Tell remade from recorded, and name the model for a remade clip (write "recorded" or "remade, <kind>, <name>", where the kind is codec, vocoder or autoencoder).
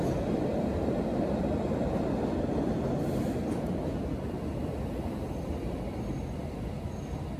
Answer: recorded